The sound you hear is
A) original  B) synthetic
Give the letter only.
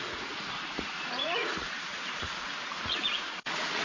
B